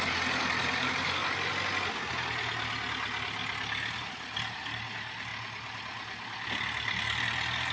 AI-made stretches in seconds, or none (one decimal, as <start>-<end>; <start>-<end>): none

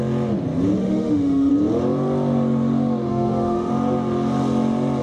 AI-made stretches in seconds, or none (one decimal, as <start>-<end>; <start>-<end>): 0.8-1.5; 3.1-3.7

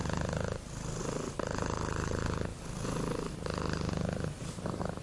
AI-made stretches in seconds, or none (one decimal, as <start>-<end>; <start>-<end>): none

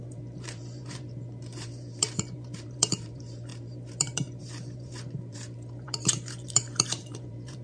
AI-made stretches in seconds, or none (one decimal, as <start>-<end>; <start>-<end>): 0.0-7.6

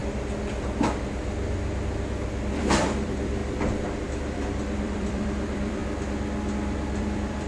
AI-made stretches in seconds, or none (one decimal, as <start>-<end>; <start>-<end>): 2.6-5.8; 7.0-7.5

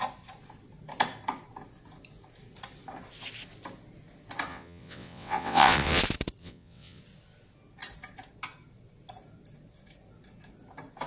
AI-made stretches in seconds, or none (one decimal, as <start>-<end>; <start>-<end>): 4.5-6.0; 6.4-7.0

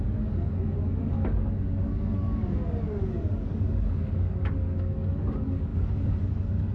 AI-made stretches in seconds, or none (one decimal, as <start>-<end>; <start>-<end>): 0.0-6.7

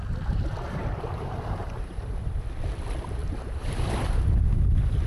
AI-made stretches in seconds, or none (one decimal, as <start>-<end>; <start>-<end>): 0.5-2.0; 3.2-4.2